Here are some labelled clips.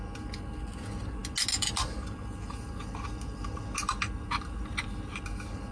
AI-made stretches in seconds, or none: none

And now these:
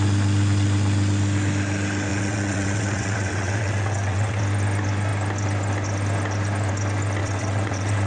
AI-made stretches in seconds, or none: 2.1-4.4 (vocoder, WaveNeXt); 7.2-8.1

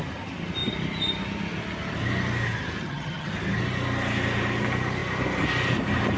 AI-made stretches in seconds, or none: 2.8-3.3 (vocoder, HiFi-GAN)

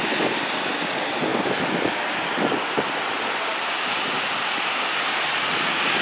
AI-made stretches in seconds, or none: none

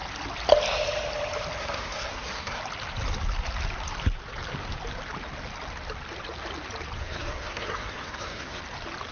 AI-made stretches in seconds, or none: 1.6-2.6 (codec, SNAC); 7.0-8.6

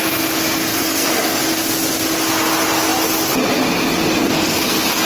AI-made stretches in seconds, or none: 0.7-1.4 (codec, SNAC); 4.2-5.0

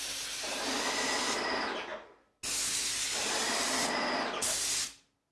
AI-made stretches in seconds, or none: none

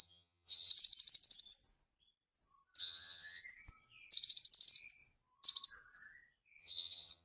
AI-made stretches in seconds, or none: 0.0-0.7 (vocoder, HiFi-GAN); 2.8-3.4; 6.6-7.2